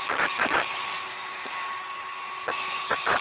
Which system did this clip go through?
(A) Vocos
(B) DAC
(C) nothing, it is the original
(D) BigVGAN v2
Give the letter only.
A